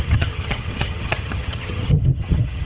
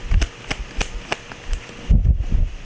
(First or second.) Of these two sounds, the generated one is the first